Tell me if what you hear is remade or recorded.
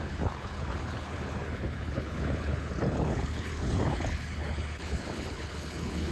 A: remade